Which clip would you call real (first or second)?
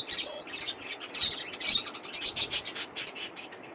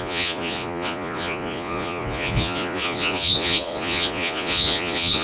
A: first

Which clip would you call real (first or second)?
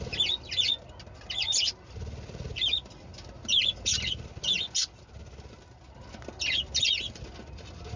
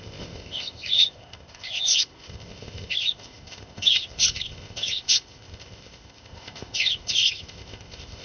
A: first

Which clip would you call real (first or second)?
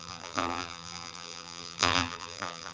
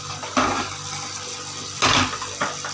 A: second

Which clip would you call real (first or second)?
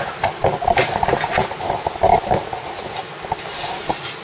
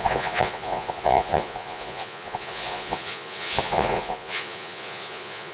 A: first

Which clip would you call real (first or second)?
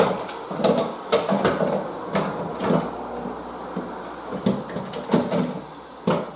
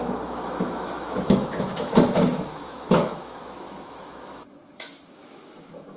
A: first